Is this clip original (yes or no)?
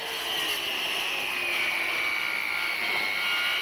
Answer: yes